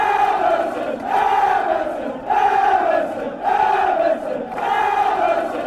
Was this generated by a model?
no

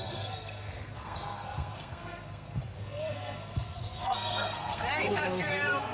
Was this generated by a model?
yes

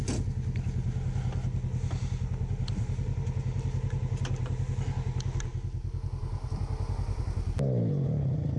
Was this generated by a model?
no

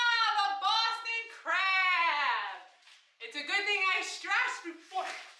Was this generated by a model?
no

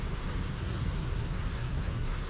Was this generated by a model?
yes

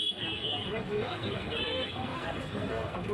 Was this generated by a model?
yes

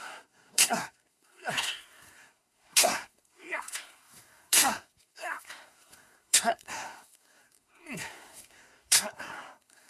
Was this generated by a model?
yes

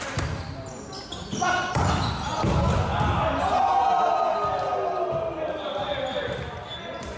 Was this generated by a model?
no